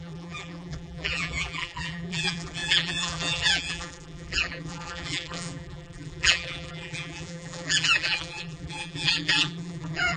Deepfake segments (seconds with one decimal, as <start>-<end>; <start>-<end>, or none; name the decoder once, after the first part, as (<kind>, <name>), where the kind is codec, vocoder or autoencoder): 0.0-10.2 (vocoder, BigVGAN v2)